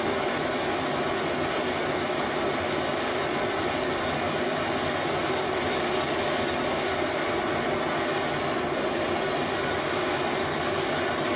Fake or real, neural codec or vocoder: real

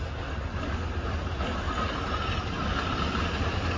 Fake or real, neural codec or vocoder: real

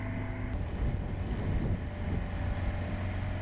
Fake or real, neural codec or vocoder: real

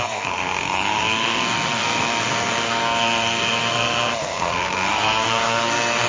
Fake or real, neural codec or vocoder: fake, codec, SNAC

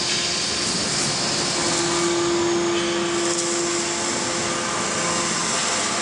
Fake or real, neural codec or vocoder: real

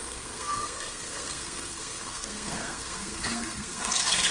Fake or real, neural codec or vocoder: fake, codec, SNAC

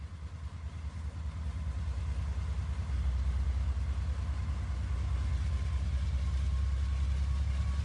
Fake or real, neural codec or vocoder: real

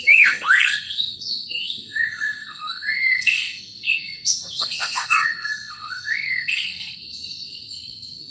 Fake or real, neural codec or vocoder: fake, codec, SNAC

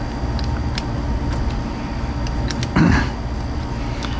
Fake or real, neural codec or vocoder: real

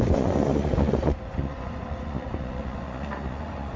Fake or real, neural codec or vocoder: fake, vocoder, Vocos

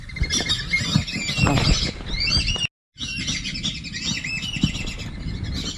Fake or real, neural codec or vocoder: real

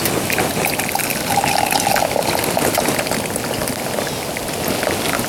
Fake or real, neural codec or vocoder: real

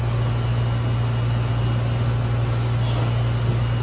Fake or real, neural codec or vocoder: real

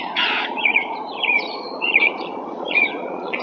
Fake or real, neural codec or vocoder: fake, vocoder, Vocos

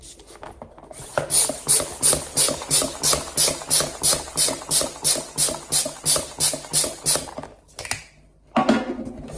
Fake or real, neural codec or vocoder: real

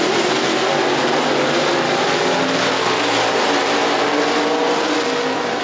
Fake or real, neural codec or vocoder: real